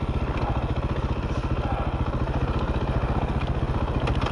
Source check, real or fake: real